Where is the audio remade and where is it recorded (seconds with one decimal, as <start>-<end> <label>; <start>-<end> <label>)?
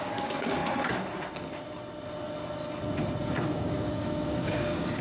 0.0-0.6 remade; 0.6-3.2 recorded; 3.2-5.0 remade